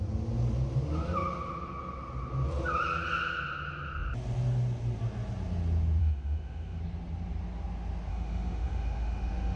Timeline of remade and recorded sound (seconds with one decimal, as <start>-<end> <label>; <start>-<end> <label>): 0.0-6.0 recorded; 6.0-6.8 remade; 6.8-8.1 recorded; 8.1-9.6 remade